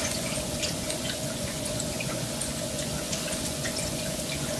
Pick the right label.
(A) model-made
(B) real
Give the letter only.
A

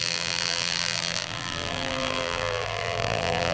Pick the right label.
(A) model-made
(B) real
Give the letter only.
A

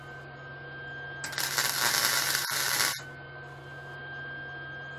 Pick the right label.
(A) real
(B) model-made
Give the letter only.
A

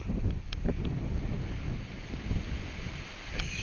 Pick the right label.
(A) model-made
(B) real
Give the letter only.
B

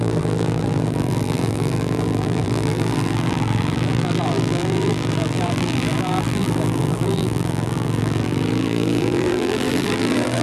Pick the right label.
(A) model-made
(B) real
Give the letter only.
A